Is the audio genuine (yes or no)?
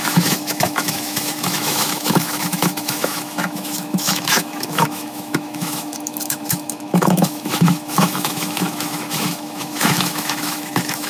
no